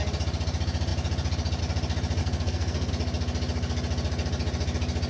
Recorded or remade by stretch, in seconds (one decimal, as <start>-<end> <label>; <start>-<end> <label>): 0.0-2.2 recorded; 2.2-2.9 remade; 2.9-5.1 recorded